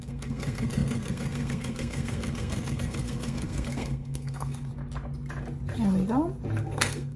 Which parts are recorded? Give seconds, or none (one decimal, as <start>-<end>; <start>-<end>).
4.7-6.6